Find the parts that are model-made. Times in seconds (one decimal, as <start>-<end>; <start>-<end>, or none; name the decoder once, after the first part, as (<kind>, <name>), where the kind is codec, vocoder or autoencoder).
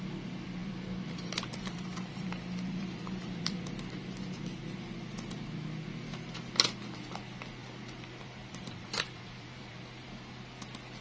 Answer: 0.6-3.6 (vocoder, BigVGAN v2); 7.6-10.1